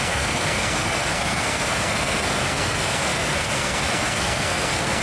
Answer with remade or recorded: remade